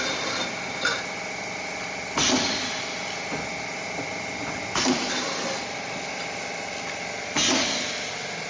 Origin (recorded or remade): recorded